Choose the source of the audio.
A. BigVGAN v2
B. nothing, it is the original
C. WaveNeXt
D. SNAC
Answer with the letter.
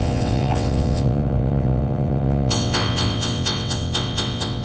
C